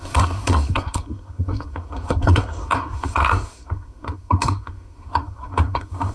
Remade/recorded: remade